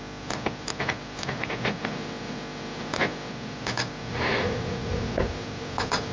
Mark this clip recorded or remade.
recorded